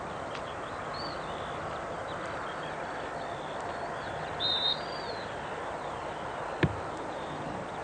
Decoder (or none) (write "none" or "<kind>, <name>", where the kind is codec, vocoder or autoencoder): none